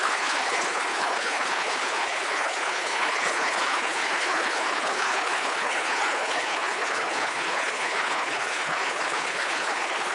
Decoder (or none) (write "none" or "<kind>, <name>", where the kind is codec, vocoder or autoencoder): codec, HILCodec